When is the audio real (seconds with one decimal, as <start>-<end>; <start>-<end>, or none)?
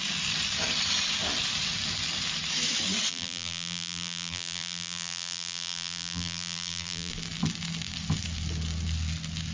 0.0-3.1; 7.1-9.5